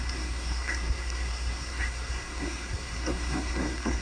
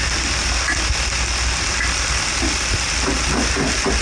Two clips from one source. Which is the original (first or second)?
second